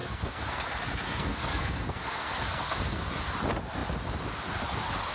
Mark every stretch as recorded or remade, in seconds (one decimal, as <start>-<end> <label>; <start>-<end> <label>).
0.0-3.1 remade; 3.1-5.1 recorded